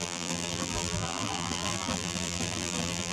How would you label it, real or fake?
fake